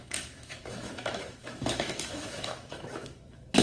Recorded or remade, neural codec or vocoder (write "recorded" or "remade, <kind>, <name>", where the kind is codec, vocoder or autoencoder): remade, autoencoder, DAC-VAE